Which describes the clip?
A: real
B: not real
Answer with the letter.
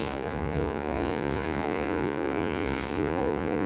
B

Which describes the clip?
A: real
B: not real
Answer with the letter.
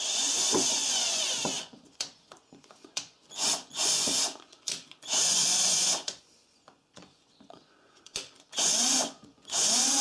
B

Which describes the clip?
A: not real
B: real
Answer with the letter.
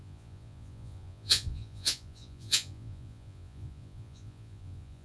A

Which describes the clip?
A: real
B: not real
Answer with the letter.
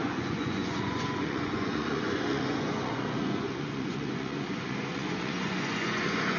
B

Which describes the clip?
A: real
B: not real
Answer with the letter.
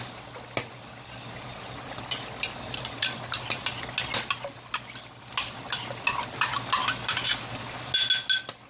A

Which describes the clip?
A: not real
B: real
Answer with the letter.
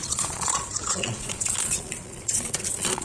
A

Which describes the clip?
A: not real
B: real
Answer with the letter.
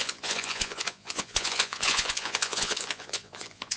A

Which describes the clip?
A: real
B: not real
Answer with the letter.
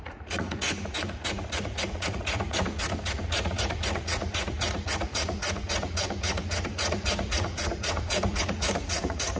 B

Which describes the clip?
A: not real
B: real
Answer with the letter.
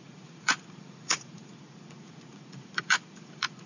A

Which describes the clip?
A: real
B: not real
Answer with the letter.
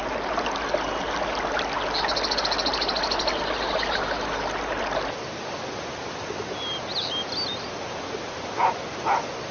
A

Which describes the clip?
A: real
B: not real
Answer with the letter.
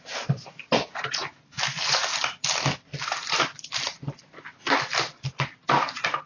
A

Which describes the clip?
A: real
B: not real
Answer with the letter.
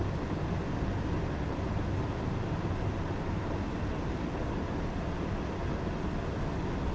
A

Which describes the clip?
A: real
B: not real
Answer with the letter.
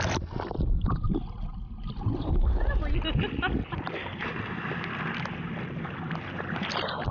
A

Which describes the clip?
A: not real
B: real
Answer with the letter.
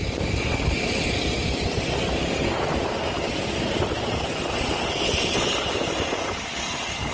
B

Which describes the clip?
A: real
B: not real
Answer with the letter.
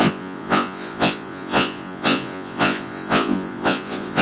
B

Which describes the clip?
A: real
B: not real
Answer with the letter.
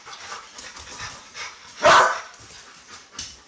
A